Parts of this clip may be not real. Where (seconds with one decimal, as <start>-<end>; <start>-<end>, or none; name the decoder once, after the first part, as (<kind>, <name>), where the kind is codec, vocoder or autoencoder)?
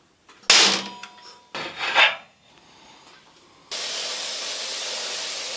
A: 2.0-2.5 (codec, SNAC)